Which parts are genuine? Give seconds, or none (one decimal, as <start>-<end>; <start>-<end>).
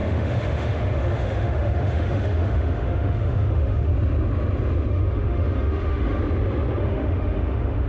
3.9-4.9; 6.2-6.8